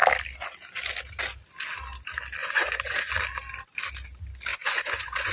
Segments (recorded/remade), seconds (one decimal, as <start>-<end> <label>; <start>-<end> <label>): 0.0-2.4 recorded; 2.4-3.1 remade; 3.1-4.5 recorded; 4.5-5.3 remade